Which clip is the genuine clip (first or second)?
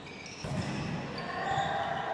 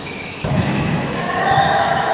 first